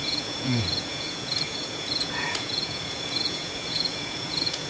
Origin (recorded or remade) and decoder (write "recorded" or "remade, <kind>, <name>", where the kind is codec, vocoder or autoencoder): remade, vocoder, Vocos